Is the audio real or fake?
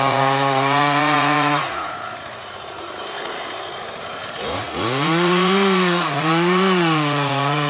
fake